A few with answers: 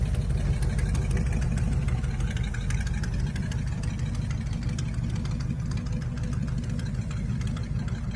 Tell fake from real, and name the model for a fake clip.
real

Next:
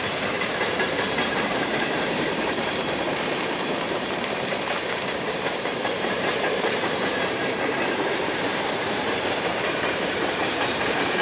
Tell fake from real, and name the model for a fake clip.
fake, vocoder, BigVGAN v2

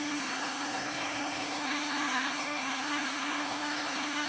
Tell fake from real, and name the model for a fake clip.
fake, codec, SNAC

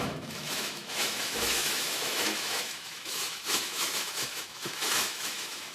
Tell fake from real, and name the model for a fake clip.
fake, autoencoder, DAC-VAE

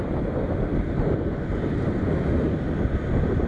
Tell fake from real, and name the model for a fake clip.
real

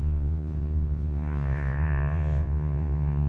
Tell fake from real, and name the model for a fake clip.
fake, vocoder, Vocos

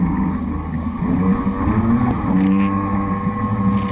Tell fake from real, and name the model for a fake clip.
real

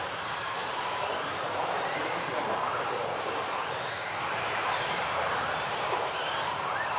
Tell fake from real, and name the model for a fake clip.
fake, vocoder, BigVGAN v2